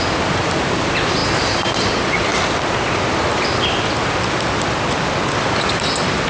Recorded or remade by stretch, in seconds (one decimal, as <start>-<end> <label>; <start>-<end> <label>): 0.0-6.3 recorded